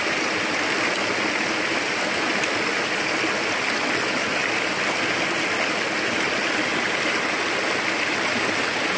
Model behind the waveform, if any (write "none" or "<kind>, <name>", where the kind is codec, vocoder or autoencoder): none